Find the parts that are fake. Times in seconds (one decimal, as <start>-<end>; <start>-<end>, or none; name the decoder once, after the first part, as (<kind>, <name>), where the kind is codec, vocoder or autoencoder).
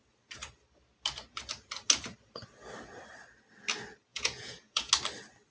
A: 4.1-4.9 (vocoder, Vocos)